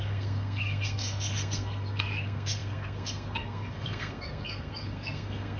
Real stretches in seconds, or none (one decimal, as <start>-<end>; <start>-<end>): none